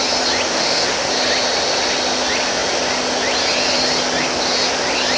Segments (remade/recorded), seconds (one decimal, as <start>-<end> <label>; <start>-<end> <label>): 0.0-0.5 recorded; 0.5-1.1 remade; 1.1-5.2 recorded